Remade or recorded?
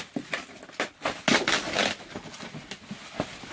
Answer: recorded